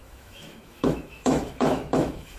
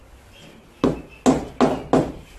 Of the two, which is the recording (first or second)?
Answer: second